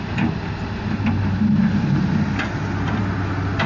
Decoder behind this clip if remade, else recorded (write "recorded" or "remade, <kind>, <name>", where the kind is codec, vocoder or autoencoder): recorded